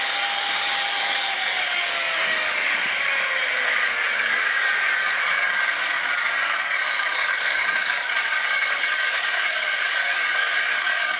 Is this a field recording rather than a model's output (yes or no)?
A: no